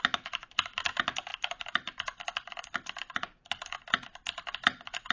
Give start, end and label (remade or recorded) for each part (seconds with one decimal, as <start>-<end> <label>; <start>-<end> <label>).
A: 0.0-5.1 recorded